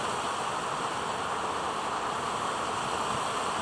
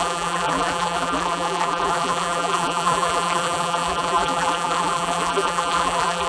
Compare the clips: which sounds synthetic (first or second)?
second